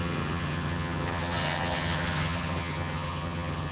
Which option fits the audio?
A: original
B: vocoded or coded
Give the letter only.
B